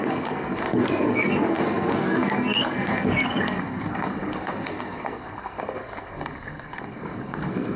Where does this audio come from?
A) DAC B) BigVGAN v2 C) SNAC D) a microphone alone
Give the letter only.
C